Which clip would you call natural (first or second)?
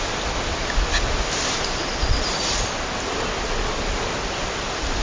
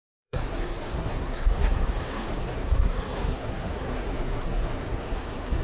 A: first